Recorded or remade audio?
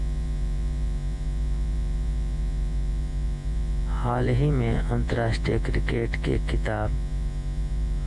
remade